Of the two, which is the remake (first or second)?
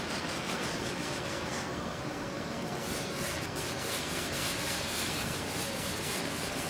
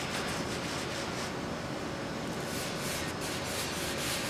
first